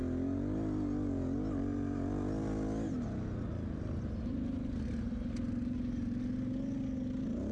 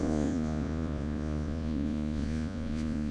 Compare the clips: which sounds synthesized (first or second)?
second